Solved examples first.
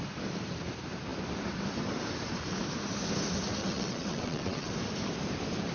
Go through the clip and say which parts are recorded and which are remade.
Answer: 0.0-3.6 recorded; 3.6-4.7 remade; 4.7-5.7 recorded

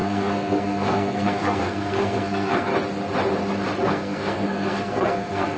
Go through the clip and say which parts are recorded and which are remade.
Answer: 0.0-2.7 remade; 2.7-3.8 recorded; 3.8-5.6 remade

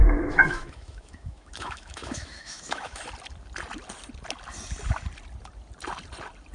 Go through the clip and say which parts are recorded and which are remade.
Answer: 0.0-3.0 remade; 3.0-6.5 recorded